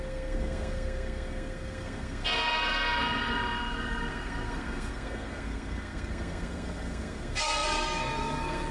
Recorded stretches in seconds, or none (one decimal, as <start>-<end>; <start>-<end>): none